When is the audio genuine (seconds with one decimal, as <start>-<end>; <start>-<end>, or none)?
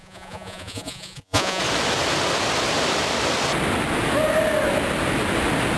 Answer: 1.6-5.8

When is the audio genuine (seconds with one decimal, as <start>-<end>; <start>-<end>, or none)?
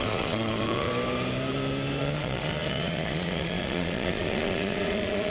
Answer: 0.9-2.0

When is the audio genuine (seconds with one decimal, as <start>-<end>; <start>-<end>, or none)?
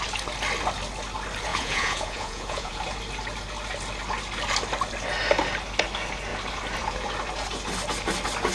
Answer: 0.0-1.5; 2.8-8.5